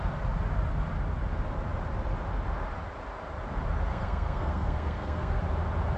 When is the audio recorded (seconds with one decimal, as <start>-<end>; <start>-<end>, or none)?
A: 0.0-3.9; 5.4-6.0